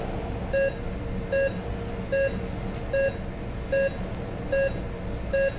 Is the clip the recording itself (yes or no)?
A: yes